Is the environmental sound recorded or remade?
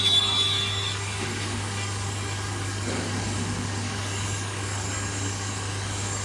remade